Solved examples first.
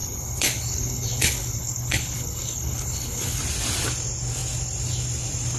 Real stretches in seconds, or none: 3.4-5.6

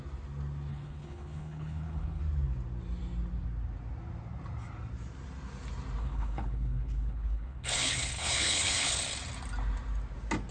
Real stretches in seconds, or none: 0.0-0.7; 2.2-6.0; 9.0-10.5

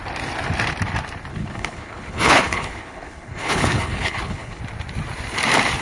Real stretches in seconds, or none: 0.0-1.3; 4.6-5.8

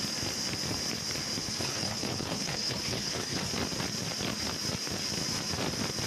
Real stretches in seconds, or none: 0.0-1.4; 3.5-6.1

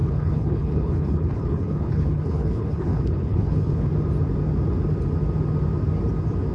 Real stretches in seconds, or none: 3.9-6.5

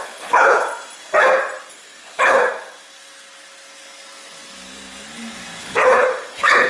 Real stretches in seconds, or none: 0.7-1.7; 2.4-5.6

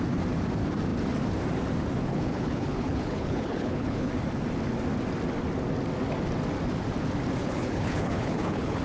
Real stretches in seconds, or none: 0.0-2.1; 4.1-7.4